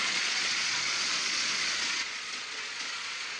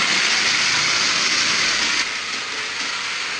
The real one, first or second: second